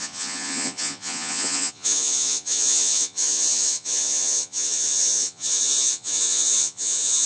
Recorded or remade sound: remade